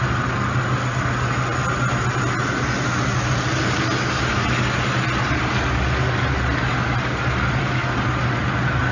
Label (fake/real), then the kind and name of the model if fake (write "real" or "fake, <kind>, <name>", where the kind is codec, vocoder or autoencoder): real